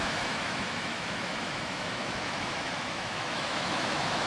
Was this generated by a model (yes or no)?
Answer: yes